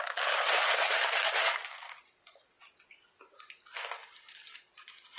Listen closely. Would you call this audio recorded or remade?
remade